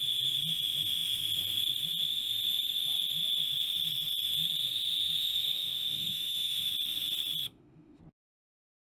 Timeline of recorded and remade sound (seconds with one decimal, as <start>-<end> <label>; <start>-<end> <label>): 0.0-5.2 recorded; 5.2-6.7 remade; 6.7-7.4 recorded; 7.4-8.0 remade; 8.0-8.9 recorded